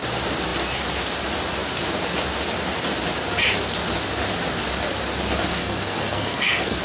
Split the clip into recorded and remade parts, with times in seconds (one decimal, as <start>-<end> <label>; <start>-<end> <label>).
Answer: 0.0-5.5 recorded; 5.5-6.8 remade